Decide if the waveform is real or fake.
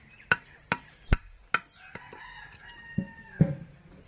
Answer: real